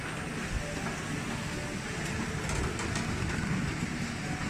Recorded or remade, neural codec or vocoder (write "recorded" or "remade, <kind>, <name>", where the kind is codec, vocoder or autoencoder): recorded